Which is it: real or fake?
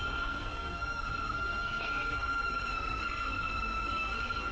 fake